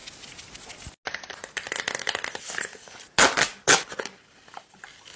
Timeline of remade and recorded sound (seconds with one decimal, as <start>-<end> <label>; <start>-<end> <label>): 0.0-5.2 recorded